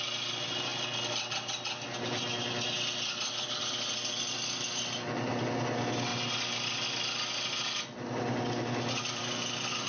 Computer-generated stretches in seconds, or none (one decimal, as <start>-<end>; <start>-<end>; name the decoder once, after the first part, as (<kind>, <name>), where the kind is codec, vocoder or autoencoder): none